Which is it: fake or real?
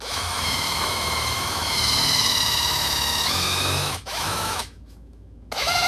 fake